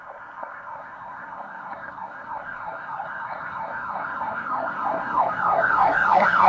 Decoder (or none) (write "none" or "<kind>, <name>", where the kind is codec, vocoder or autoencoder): codec, SNAC